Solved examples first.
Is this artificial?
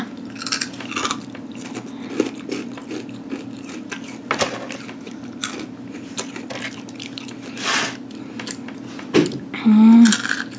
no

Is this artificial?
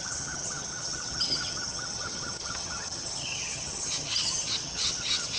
yes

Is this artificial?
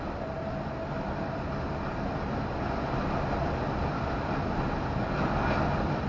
no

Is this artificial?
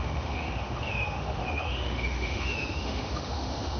yes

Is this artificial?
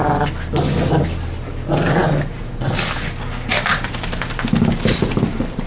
no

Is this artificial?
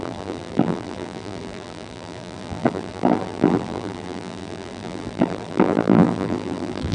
yes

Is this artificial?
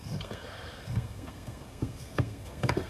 yes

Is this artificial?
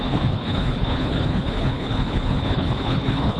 yes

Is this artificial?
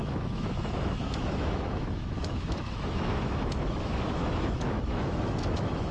yes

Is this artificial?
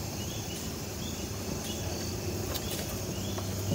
no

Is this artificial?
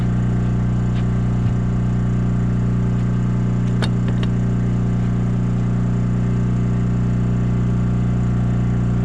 no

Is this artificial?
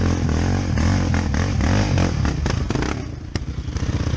no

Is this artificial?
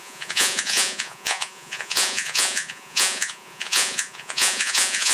yes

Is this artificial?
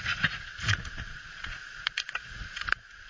yes